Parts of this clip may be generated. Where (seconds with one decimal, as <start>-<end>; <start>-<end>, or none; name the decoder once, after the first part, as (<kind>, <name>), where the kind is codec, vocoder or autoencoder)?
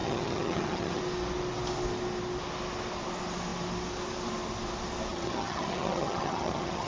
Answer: 0.0-1.0 (vocoder, HiFi-GAN); 5.1-6.9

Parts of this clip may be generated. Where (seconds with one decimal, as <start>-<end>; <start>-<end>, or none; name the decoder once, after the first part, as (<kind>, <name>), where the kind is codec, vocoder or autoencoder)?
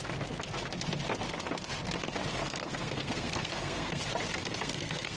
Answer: 2.4-4.0 (codec, SNAC); 4.4-5.2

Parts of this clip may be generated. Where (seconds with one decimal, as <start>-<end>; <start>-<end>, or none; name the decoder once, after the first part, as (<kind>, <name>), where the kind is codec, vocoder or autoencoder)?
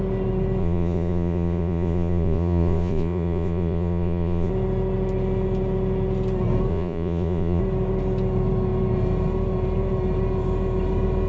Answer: 0.6-4.5 (vocoder, Vocos); 6.7-7.6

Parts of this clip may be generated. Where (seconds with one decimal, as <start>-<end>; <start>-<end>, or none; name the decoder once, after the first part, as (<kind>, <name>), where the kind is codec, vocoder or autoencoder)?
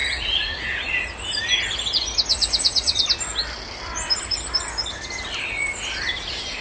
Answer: 0.0-0.9 (vocoder, Vocos); 2.3-3.0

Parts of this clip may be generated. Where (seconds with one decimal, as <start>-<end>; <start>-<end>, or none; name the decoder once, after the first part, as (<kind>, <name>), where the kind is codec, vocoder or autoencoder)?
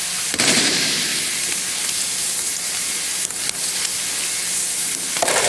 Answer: 0.0-1.1 (vocoder, BigVGAN v2); 2.2-3.1; 4.9-5.5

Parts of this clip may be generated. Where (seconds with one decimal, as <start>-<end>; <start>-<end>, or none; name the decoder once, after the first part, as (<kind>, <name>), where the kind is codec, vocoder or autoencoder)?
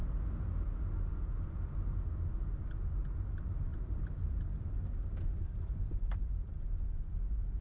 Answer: 3.7-6.1 (vocoder, BigVGAN v2)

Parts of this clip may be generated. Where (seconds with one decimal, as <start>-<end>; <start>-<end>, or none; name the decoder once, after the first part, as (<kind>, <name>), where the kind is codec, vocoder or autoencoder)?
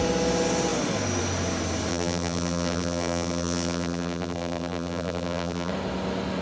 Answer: 1.9-5.7 (vocoder, BigVGAN v2)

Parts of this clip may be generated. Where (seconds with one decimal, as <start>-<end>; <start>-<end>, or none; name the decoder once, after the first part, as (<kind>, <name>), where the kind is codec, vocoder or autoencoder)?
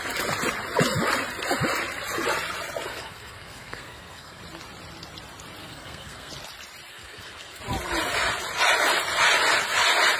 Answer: 2.9-4.4 (codec, SNAC); 5.6-6.3; 6.9-7.6